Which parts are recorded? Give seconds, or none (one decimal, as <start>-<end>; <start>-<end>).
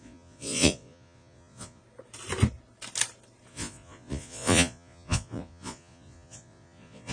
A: 1.8-3.5